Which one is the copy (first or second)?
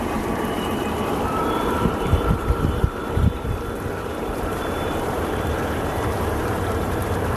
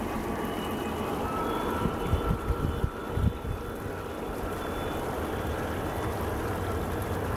first